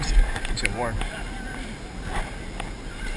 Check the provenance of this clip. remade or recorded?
recorded